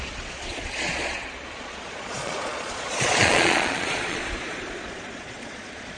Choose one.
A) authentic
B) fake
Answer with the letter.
B